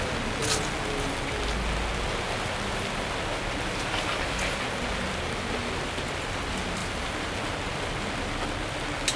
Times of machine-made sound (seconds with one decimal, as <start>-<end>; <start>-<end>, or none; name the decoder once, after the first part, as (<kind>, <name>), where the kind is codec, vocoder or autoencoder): none

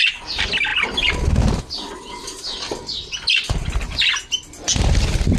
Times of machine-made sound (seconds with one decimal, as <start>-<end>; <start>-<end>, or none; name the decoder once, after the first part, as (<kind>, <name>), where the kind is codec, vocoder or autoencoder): none

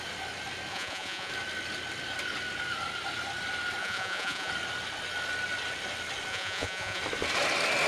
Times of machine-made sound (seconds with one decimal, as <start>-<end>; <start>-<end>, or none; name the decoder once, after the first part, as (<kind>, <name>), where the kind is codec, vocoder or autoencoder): 0.7-1.3 (vocoder, Vocos); 3.8-4.5; 6.3-7.0

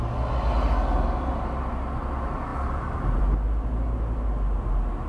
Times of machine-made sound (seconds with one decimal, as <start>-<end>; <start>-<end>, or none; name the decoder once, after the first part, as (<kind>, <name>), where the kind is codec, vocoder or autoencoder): none

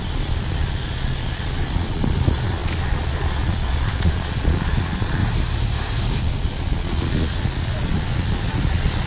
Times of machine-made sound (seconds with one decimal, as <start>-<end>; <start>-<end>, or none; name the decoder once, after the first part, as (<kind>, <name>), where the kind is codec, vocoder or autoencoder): 0.0-5.2 (vocoder, Vocos); 6.2-9.1

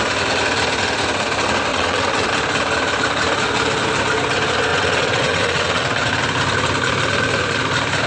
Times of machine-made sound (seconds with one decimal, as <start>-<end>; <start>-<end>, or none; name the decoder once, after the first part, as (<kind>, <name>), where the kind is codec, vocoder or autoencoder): 1.7-2.3 (vocoder, WaveNeXt); 4.7-6.1

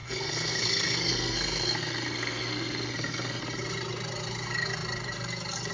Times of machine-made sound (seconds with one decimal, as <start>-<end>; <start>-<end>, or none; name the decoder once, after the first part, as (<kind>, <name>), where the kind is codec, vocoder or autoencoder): 0.0-3.4 (codec, SNAC)